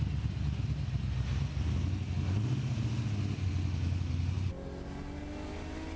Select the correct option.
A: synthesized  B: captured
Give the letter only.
B